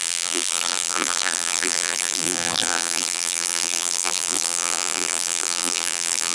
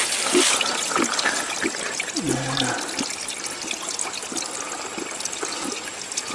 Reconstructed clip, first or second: first